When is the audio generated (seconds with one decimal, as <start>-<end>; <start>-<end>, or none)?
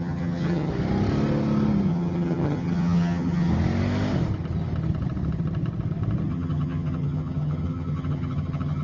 0.0-0.7; 1.9-3.5; 6.3-8.8